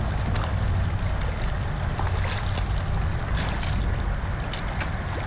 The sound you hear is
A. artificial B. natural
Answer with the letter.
B